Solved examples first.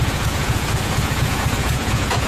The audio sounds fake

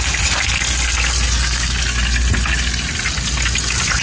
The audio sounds real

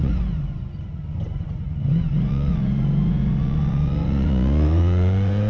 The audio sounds fake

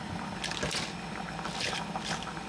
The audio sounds real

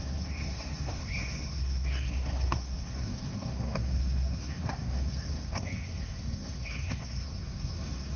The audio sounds fake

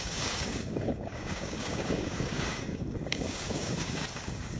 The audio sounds fake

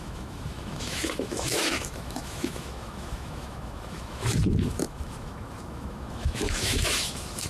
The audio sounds fake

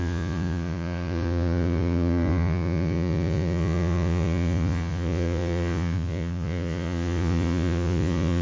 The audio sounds fake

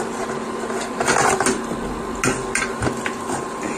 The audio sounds real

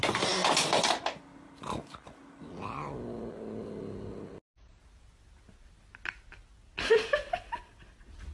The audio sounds real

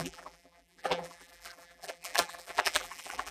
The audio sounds fake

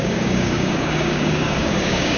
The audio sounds fake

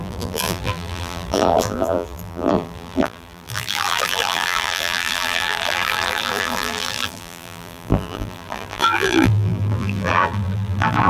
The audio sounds fake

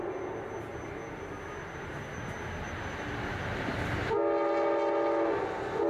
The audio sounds real